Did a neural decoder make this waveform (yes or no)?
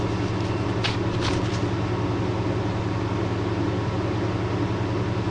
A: no